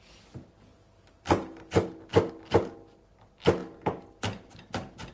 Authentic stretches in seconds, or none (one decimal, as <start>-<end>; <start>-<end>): 0.0-5.1